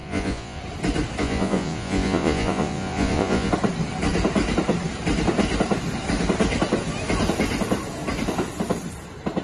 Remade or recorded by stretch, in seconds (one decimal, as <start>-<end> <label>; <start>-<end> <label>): 0.0-0.6 remade; 0.6-1.2 recorded; 1.2-3.5 remade; 3.5-9.4 recorded